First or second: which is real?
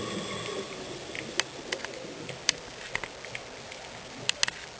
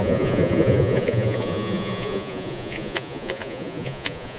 first